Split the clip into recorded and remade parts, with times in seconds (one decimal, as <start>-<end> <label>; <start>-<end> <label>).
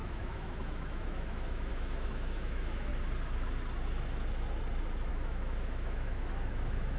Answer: 0.0-2.9 remade; 2.9-5.1 recorded; 5.1-7.0 remade